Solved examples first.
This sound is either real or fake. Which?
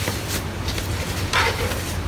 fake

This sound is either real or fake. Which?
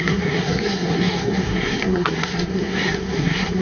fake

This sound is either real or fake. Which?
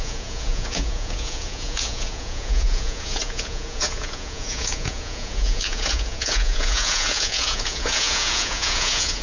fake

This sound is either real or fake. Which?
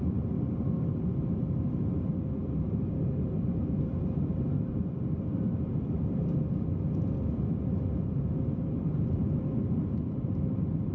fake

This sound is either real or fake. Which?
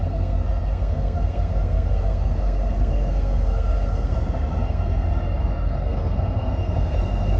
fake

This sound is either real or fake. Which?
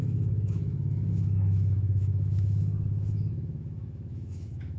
fake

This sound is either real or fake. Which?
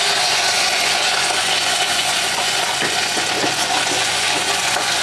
fake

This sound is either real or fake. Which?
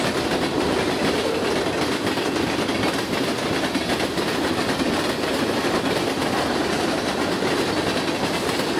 real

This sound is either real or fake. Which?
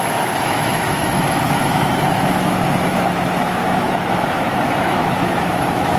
fake